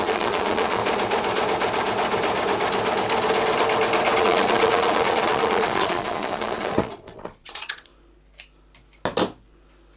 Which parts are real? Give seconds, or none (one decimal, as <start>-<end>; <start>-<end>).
0.8-4.2; 7.9-10.0

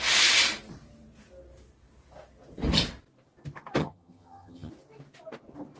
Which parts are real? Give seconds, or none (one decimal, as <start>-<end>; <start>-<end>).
0.0-3.8; 4.7-5.8

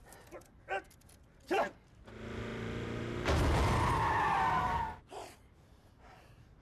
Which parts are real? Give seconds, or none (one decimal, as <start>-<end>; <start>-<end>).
0.0-6.6

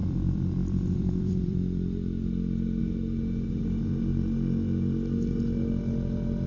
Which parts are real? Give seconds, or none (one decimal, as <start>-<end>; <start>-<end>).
2.8-6.5